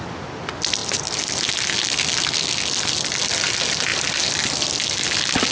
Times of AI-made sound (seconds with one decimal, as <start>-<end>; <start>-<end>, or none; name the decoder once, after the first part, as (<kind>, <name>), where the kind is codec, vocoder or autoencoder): none

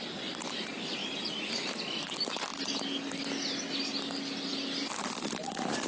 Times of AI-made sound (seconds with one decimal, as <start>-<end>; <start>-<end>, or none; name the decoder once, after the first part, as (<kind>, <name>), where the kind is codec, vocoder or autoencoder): none

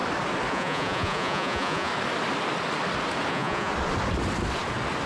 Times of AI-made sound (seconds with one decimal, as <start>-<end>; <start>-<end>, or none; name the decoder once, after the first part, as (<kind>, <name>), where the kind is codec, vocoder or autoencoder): 0.5-1.9 (vocoder, Vocos); 3.3-3.7